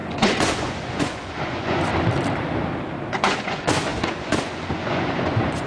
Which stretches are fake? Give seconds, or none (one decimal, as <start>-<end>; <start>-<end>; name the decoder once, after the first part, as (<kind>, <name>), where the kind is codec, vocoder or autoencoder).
0.0-1.9 (vocoder, Vocos); 3.1-5.7